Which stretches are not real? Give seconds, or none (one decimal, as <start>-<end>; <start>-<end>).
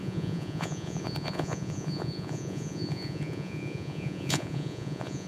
0.0-5.3